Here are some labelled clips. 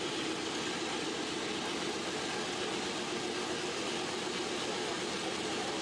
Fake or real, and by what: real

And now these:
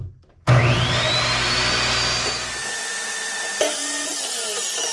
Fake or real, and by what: real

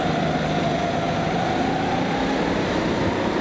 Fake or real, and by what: real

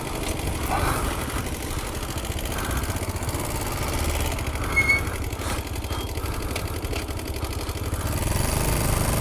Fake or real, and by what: real